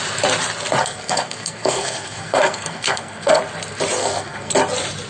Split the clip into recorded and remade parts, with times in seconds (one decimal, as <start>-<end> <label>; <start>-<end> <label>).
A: 0.0-0.8 recorded; 0.8-3.4 remade; 3.4-4.0 recorded; 4.0-4.5 remade; 4.5-5.1 recorded